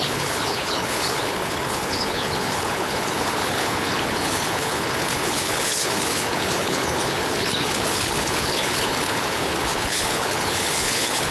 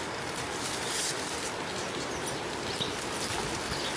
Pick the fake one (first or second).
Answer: first